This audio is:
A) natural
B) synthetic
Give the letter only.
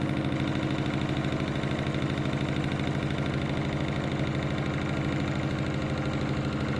A